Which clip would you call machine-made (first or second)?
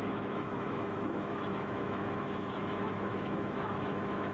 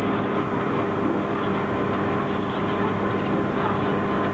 first